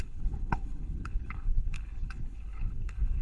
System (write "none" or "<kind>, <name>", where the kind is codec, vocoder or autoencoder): codec, HILCodec